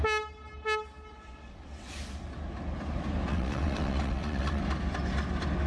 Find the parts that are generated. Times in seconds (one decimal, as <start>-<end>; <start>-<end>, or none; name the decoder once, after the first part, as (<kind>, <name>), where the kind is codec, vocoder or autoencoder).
1.1-1.9 (vocoder, WaveNeXt); 3.3-4.6